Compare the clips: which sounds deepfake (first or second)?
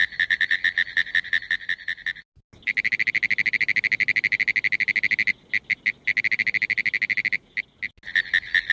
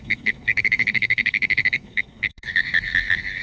second